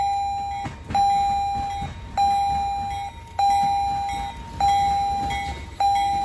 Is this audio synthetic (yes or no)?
no